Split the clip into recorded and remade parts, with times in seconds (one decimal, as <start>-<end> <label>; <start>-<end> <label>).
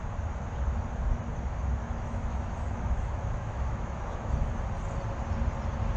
0.0-1.8 recorded; 1.8-4.3 remade; 4.3-6.0 recorded